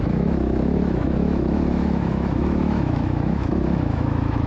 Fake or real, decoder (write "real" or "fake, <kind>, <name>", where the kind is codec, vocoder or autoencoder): fake, autoencoder, DAC-VAE